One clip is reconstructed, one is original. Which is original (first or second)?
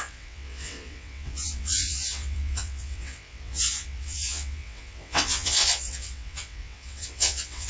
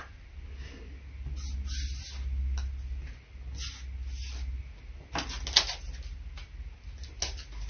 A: second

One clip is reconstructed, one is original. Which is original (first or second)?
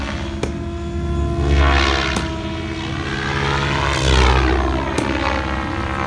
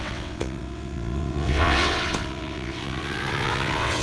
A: first